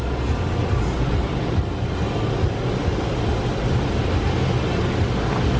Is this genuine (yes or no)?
yes